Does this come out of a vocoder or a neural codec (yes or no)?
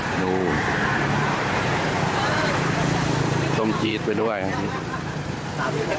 yes